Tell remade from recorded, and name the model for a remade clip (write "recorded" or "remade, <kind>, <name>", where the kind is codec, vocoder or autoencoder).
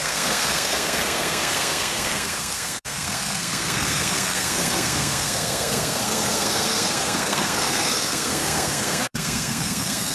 remade, codec, SNAC